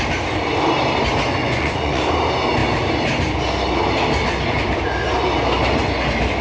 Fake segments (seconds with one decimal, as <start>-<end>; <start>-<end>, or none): 1.4-2.0